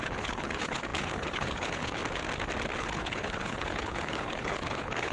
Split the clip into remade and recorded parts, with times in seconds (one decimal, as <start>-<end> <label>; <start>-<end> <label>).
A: 0.0-2.0 remade; 2.0-2.8 recorded; 2.8-5.1 remade